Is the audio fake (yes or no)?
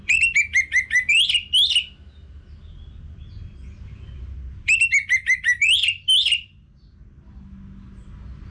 no